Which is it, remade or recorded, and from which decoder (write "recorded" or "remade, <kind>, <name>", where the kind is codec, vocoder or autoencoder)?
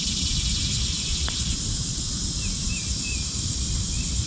recorded